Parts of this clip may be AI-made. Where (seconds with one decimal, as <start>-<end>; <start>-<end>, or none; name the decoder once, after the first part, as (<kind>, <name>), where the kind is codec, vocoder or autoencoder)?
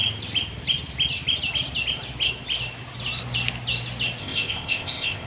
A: 4.2-5.3 (codec, ZipCodec)